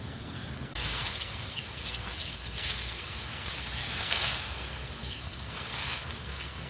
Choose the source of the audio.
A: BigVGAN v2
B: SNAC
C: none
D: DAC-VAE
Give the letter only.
B